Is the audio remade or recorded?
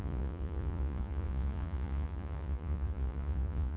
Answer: remade